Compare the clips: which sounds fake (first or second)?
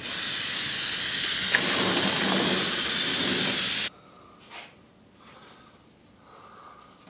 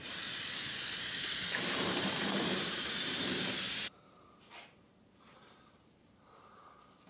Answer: second